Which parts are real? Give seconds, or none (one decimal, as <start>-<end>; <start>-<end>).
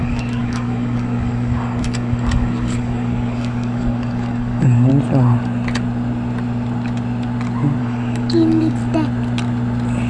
4.9-7.8; 8.8-10.1